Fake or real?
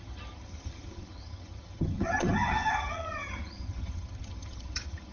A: fake